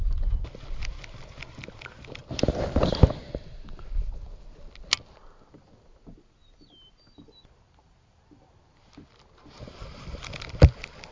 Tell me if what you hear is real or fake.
real